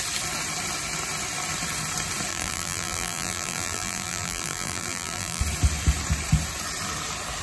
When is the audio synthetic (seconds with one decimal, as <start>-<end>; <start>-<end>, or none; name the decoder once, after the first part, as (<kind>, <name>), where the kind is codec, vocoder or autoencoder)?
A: 2.3-5.4 (vocoder, BigVGAN v2)